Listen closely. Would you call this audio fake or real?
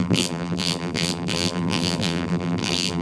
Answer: fake